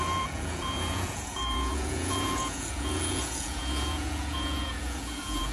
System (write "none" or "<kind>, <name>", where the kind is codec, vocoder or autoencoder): vocoder, Vocos